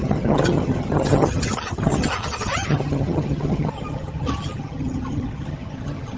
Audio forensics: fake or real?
fake